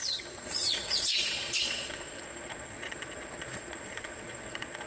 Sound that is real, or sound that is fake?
fake